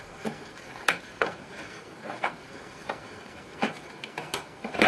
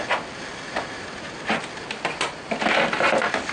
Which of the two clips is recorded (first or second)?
second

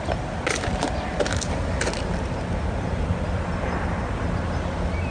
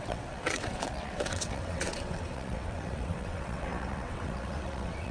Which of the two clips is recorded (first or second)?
first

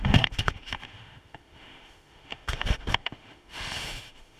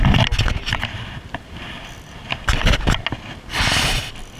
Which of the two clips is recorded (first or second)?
second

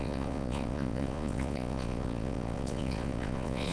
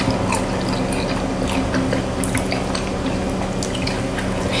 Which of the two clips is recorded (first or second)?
second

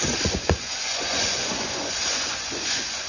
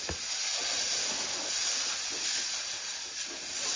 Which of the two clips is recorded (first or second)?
second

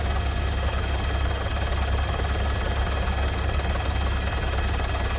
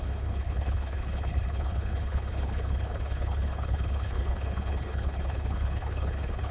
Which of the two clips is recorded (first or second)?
first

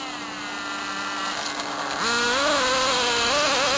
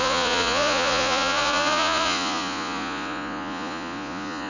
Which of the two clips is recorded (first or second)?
first